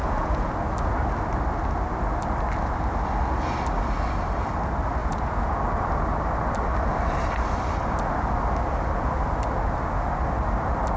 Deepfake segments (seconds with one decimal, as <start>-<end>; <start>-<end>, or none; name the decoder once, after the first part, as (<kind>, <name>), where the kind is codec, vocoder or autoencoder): 0.0-0.5 (vocoder, Vocos); 5.0-5.6